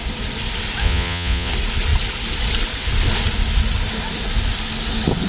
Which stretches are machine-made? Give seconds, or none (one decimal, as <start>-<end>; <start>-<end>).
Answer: 0.8-1.5